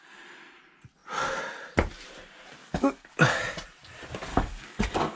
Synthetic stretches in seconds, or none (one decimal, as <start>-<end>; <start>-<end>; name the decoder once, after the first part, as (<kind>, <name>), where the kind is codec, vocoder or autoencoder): 2.6-3.4 (codec, DAC); 4.3-5.2